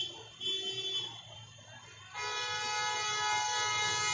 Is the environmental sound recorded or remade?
recorded